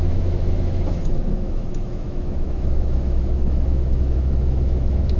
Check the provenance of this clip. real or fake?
fake